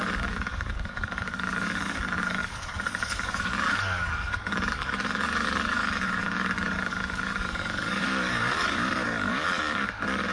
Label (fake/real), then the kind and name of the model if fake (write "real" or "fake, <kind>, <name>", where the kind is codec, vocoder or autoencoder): fake, codec, DAC